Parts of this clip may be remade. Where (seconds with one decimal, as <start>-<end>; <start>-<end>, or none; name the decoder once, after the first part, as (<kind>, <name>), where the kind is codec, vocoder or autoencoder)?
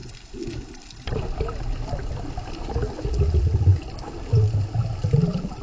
0.0-3.3 (vocoder, BigVGAN v2)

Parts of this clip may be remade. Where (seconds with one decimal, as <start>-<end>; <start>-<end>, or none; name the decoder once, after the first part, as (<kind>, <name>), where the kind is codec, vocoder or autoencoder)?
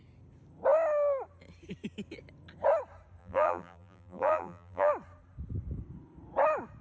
3.2-4.9 (vocoder, BigVGAN v2)